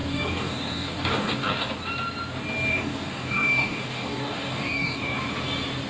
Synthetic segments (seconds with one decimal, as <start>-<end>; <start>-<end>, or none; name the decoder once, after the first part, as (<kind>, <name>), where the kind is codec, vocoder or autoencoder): 0.0-1.7 (codec, DAC); 2.7-5.2